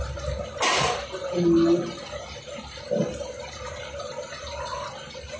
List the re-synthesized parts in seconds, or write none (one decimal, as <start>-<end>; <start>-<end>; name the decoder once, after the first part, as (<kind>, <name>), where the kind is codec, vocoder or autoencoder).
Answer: none